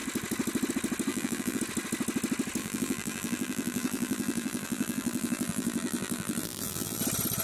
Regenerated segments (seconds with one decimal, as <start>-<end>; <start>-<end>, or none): 1.1-1.6; 2.6-7.0